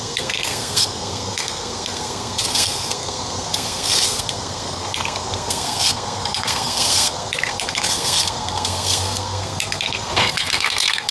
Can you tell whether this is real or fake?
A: fake